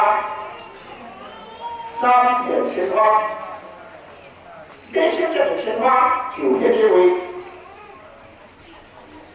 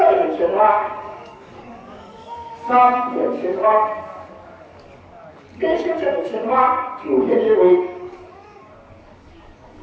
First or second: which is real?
first